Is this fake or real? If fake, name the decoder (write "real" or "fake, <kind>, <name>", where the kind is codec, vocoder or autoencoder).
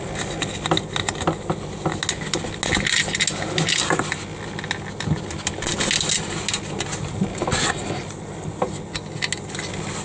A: real